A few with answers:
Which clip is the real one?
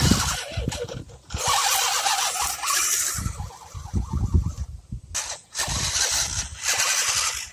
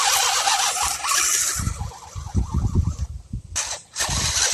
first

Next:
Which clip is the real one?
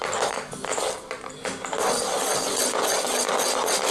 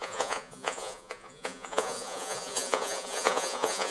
first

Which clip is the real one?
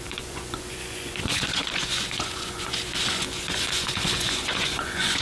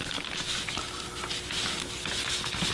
second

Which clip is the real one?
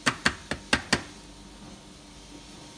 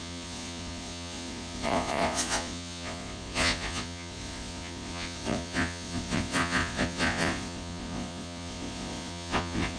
first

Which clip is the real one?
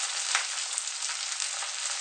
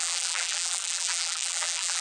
first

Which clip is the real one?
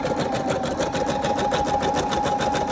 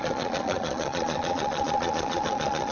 first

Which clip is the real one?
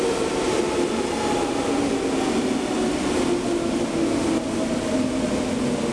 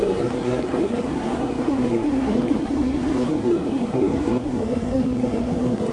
first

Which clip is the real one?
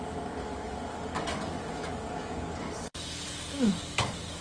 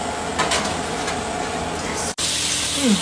second